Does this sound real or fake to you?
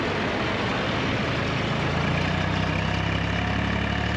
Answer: real